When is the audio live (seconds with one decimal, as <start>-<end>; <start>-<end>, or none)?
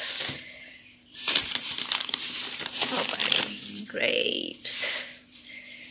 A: 3.2-3.8